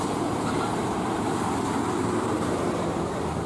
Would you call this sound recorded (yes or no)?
no